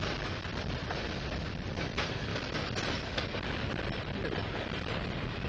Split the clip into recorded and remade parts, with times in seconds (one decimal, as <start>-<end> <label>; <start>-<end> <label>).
0.0-5.5 recorded